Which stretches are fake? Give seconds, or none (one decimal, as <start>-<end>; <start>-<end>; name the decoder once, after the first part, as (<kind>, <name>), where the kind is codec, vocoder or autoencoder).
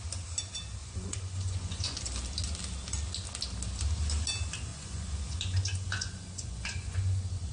0.8-2.0 (vocoder, Vocos); 4.7-7.5